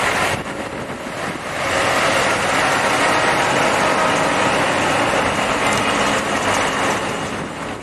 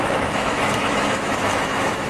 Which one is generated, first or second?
second